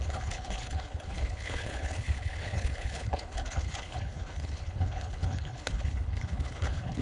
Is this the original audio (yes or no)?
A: no